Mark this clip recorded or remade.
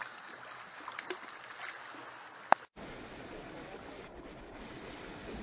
recorded